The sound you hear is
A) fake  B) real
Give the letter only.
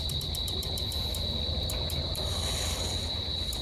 A